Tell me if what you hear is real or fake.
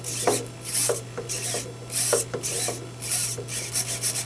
real